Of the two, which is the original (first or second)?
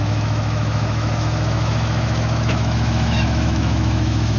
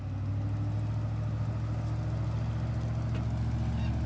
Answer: second